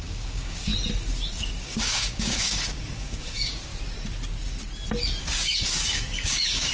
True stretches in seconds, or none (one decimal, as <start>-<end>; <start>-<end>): 0.7-1.3; 3.7-5.2